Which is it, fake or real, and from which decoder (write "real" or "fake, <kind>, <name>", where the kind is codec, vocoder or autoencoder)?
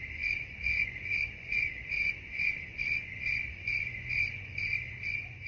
fake, vocoder, Vocos